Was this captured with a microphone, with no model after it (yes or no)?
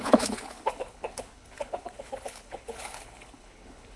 no